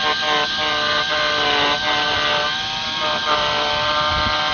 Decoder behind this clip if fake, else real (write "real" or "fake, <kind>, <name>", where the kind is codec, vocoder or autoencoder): real